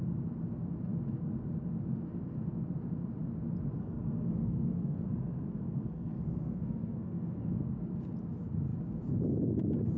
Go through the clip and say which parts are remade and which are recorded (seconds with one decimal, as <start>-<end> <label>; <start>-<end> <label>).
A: 0.0-3.8 recorded; 3.8-7.5 remade; 7.5-10.0 recorded

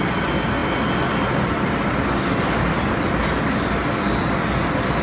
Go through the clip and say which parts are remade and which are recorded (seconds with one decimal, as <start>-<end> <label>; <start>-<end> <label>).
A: 0.0-5.0 recorded

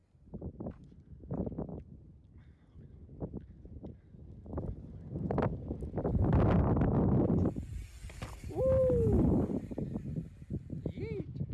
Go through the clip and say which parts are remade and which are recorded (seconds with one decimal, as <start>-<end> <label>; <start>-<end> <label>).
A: 0.0-11.5 recorded

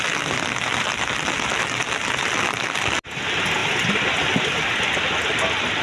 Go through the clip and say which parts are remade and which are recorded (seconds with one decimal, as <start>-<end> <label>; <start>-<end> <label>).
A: 0.0-5.8 recorded

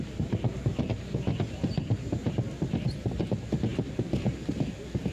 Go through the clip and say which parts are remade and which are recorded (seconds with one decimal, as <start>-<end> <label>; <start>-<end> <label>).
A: 0.0-1.6 recorded; 1.6-3.3 remade; 3.3-3.7 recorded; 3.7-4.6 remade; 4.6-5.1 recorded

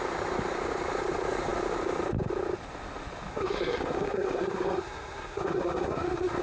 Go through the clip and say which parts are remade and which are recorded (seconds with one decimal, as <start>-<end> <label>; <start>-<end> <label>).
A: 0.0-3.3 recorded; 3.3-6.4 remade

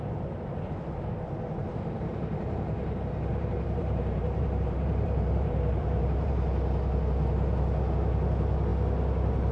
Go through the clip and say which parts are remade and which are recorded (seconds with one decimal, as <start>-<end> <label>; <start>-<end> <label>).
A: 0.0-1.6 recorded; 1.6-6.3 remade; 6.3-9.5 recorded

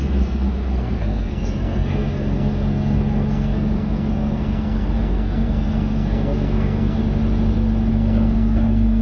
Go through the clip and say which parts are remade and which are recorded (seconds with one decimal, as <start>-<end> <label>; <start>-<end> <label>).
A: 0.0-7.0 remade; 7.0-7.9 recorded; 7.9-9.0 remade